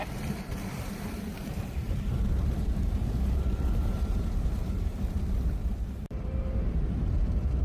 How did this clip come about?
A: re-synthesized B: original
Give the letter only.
A